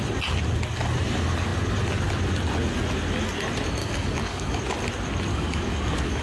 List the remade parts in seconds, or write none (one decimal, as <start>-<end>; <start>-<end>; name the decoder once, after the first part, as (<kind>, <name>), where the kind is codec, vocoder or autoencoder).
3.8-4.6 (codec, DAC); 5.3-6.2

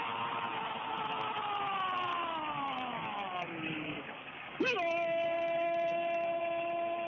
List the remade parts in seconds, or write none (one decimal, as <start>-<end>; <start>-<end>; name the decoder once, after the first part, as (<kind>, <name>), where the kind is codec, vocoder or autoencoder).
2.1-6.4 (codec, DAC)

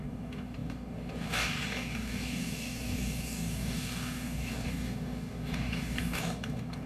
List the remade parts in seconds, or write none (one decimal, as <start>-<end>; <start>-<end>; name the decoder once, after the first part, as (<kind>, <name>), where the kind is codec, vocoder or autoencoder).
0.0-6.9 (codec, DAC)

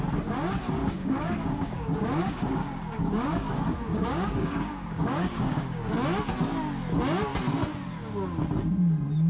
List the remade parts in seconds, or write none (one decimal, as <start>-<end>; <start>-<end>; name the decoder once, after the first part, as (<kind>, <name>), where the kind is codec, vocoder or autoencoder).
0.8-3.5 (codec, DAC); 3.9-5.9

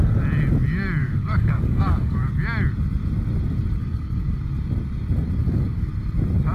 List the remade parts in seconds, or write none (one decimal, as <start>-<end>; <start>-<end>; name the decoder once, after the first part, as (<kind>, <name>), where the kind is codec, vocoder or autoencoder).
1.0-2.3 (codec, DAC); 3.8-4.4; 5.4-5.9